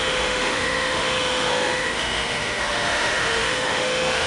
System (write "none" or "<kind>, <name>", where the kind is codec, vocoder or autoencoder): autoencoder, DAC-VAE